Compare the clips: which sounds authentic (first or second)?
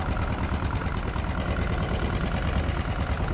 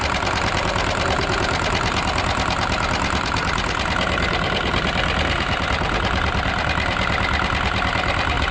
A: first